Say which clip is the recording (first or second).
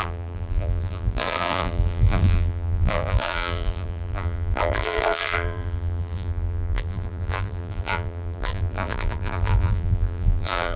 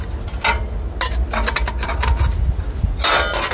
second